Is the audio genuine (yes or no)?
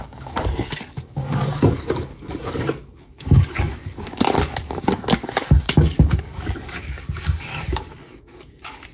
no